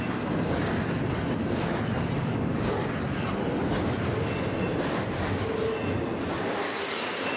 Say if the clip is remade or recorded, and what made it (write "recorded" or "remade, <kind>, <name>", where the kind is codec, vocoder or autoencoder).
recorded